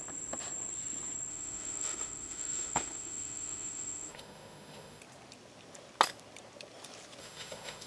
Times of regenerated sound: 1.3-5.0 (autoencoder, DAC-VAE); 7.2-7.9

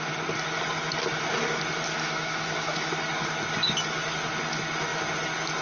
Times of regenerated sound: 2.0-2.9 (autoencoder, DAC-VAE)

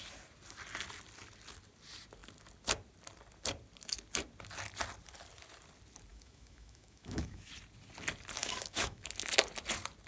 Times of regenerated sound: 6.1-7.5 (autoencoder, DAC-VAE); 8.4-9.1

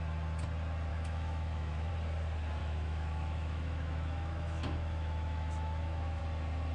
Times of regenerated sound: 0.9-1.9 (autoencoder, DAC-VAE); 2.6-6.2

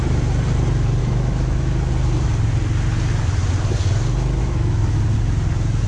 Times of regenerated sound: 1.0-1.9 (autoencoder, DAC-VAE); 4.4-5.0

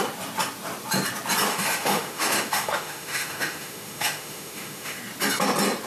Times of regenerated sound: 1.5-5.0 (autoencoder, DAC-VAE)

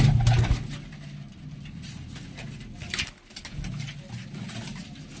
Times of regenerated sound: none

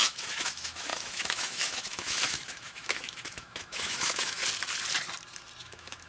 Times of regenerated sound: 0.0-4.4 (autoencoder, DAC-VAE); 5.6-6.1